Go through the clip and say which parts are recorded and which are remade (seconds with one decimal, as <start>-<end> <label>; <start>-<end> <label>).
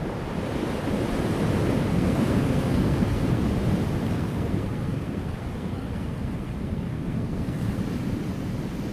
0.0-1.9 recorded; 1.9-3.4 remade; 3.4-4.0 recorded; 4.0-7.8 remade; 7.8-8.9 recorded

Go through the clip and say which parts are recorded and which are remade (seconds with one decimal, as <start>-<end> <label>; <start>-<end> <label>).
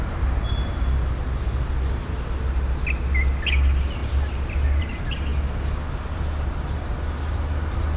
0.0-8.0 recorded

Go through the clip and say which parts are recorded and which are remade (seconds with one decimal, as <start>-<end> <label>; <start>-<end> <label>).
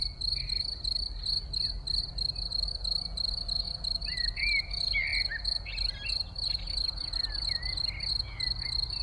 0.0-9.0 recorded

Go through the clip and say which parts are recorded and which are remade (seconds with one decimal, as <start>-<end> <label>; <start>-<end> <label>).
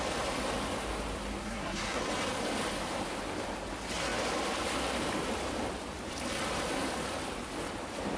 0.0-1.4 recorded; 1.4-2.0 remade; 2.0-8.2 recorded